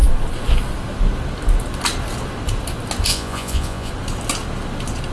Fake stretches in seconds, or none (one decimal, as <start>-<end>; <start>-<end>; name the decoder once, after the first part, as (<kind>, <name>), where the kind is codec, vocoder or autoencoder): 3.1-3.9 (vocoder, Vocos)